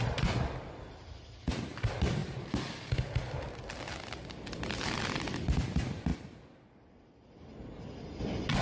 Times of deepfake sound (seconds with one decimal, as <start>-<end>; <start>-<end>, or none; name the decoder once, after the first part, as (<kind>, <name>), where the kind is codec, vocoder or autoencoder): 0.0-6.1 (vocoder, BigVGAN v2); 8.2-8.6